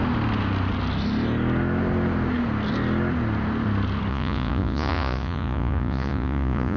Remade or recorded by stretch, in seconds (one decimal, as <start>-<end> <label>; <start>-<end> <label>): 0.0-4.1 recorded; 4.1-6.8 remade